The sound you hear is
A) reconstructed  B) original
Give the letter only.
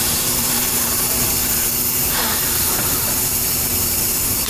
A